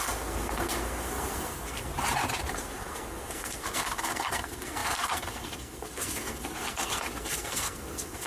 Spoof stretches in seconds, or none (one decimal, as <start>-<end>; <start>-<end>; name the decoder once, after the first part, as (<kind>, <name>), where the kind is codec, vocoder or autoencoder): 0.0-1.9 (codec, SNAC); 2.5-8.3